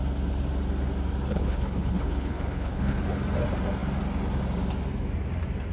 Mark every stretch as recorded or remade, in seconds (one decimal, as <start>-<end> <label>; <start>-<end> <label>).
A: 0.0-1.3 recorded; 1.3-3.0 remade; 3.0-5.7 recorded